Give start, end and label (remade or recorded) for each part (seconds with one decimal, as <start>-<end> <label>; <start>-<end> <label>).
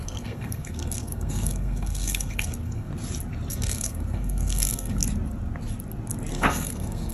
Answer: 0.0-2.9 remade; 2.9-3.5 recorded; 3.5-5.0 remade; 5.0-6.3 recorded; 6.3-7.1 remade